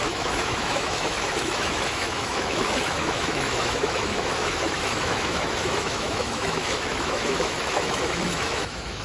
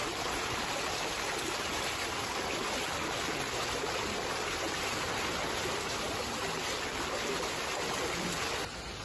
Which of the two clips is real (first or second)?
second